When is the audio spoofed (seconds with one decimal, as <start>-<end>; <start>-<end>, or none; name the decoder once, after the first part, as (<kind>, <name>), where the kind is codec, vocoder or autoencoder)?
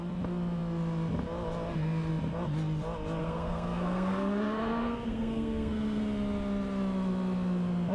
3.2-6.0 (codec, SNAC)